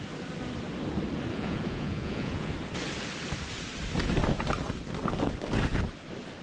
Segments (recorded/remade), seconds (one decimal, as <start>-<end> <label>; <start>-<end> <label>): 0.0-1.3 recorded; 1.3-2.5 remade; 2.5-6.4 recorded